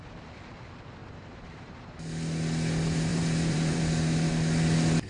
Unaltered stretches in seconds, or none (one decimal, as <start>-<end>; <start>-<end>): 0.0-1.0; 1.9-3.1; 4.3-5.1